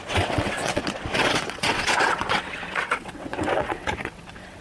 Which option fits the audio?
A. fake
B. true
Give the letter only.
A